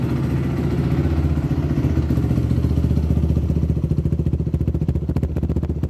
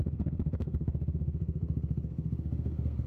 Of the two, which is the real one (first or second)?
first